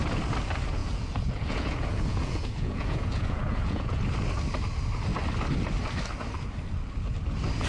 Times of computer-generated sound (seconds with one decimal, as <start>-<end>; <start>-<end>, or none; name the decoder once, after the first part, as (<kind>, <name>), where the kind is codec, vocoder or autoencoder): 0.8-4.0 (vocoder, Vocos)